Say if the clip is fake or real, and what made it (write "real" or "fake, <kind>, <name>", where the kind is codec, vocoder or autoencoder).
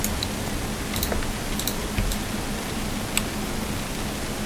real